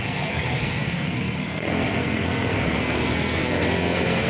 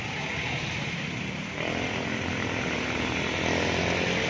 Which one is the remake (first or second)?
first